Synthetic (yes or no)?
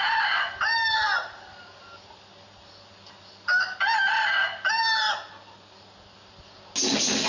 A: no